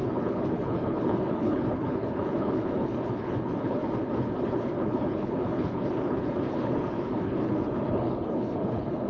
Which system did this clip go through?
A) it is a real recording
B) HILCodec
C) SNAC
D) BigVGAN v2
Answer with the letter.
B